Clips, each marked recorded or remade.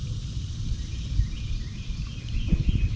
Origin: remade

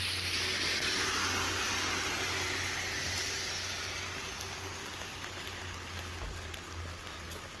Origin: recorded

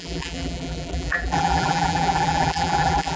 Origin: remade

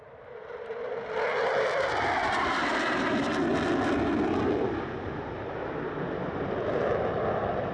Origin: recorded